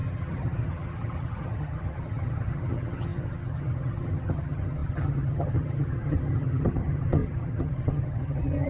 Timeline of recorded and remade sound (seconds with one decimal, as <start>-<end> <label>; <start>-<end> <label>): 0.0-8.7 remade